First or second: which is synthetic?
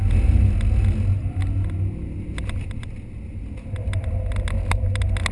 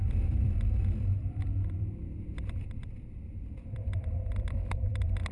second